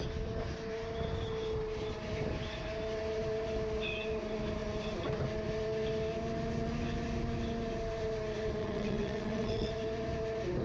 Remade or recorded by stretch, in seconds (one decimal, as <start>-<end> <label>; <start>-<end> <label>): 0.0-8.6 recorded; 8.6-9.7 remade; 9.7-10.6 recorded